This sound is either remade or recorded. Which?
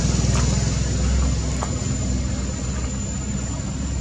recorded